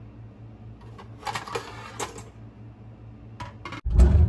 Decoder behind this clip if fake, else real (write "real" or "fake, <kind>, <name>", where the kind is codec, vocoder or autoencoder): real